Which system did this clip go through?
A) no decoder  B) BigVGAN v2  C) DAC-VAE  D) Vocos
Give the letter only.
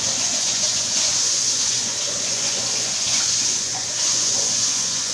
D